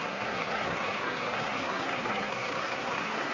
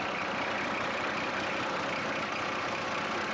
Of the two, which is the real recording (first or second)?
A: second